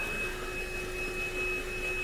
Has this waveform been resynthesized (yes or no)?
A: no